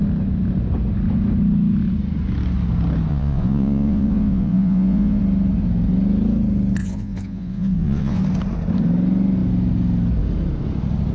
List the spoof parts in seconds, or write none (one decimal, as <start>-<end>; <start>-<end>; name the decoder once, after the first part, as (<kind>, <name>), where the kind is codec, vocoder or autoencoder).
3.1-5.2 (vocoder, Vocos); 6.8-8.2